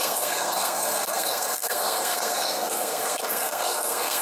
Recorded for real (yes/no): no